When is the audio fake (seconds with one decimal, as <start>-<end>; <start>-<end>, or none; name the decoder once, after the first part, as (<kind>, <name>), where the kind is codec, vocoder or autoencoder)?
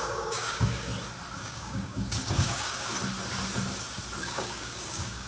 0.0-0.9 (codec, DAC); 1.4-2.9; 4.2-5.3